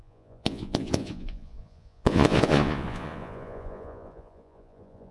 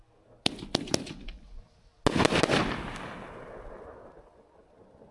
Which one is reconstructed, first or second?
first